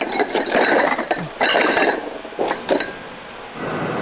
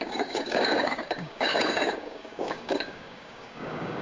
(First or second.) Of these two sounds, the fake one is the second